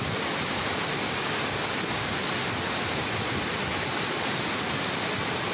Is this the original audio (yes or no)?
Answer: yes